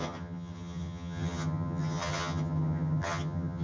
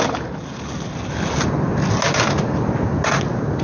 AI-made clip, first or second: first